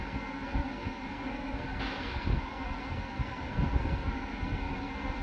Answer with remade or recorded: remade